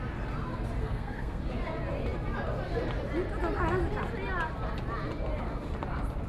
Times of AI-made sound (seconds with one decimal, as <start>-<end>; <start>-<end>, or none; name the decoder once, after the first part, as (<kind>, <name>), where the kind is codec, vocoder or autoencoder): 0.8-1.4 (codec, SNAC)